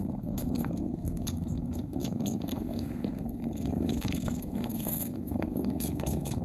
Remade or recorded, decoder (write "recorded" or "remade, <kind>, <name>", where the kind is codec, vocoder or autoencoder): remade, codec, SNAC